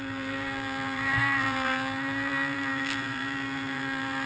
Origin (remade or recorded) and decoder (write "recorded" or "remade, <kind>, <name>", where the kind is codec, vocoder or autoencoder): remade, vocoder, BigVGAN v2